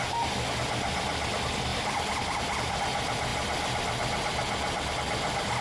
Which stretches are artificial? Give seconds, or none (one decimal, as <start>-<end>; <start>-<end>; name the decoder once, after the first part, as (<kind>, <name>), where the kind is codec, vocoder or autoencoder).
none